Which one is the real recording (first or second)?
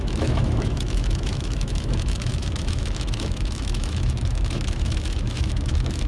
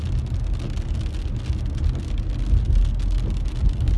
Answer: second